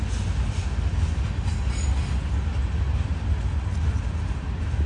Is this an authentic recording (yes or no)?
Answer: yes